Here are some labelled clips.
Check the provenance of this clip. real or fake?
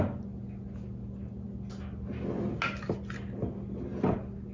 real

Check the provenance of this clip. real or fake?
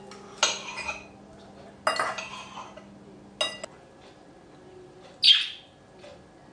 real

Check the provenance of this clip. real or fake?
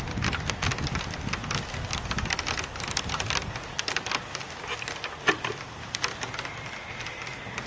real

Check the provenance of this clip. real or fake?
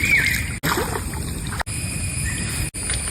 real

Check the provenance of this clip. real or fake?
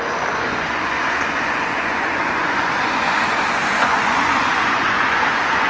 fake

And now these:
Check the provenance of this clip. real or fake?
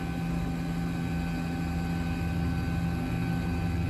real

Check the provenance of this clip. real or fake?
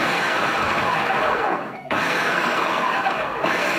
fake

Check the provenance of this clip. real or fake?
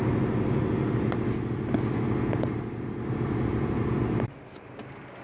real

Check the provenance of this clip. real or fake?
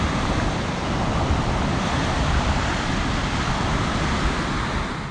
real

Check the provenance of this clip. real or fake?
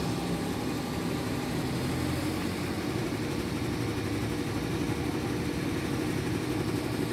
real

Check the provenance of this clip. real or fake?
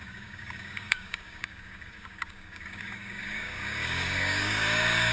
fake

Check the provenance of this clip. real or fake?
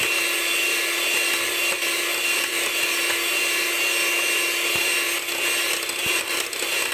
real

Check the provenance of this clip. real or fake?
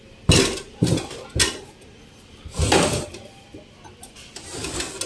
real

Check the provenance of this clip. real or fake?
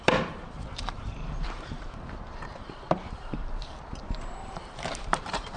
fake